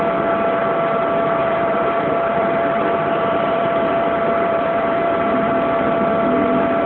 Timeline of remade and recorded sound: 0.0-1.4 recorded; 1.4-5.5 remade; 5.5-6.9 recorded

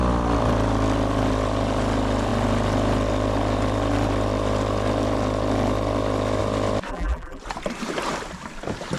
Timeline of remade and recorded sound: 0.0-6.9 recorded; 6.9-7.4 remade; 7.4-9.0 recorded